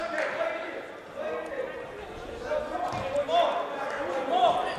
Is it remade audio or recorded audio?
recorded